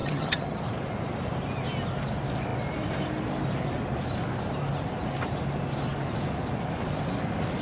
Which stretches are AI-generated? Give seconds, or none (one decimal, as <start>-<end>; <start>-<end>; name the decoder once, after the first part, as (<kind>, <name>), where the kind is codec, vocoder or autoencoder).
0.0-0.6 (vocoder, HiFi-GAN)